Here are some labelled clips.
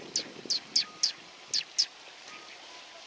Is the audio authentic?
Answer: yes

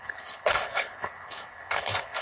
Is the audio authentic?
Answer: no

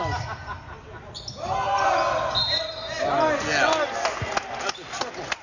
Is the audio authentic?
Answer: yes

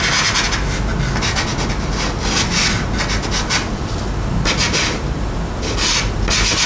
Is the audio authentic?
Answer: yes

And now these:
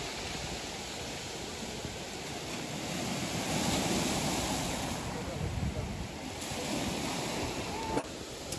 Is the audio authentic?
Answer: yes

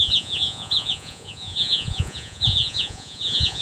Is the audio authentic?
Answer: no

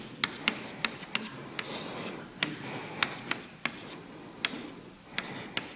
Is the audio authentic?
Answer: yes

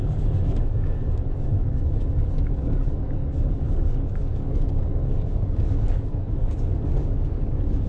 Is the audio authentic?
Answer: no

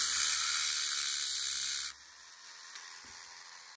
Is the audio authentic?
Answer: yes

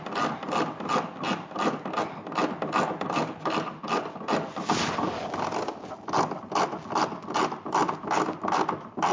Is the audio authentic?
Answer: yes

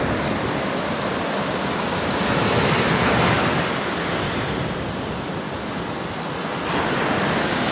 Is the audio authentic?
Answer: yes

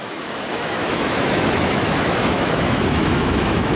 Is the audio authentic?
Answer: no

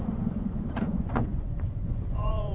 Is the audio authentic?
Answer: no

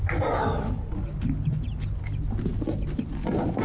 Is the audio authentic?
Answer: yes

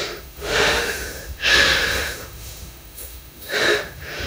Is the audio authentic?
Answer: no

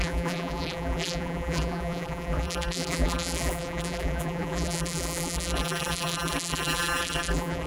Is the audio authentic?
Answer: no